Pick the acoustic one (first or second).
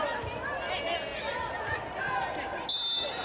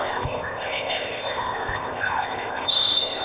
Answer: first